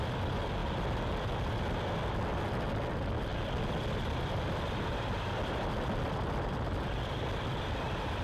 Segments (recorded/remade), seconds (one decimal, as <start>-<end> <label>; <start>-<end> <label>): 0.0-8.2 recorded